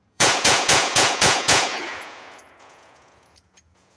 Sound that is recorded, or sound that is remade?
remade